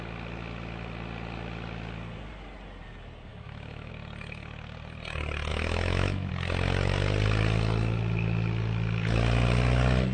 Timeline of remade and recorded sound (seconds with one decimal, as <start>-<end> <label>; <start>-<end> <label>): 0.0-3.3 recorded; 3.3-3.9 remade; 3.9-5.5 recorded; 5.5-6.3 remade; 6.3-10.1 recorded

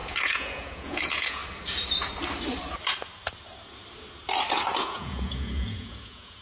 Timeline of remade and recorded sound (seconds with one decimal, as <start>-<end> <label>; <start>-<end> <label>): 0.0-1.4 remade; 1.4-4.8 recorded; 4.8-6.4 remade